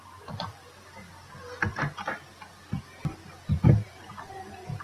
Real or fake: real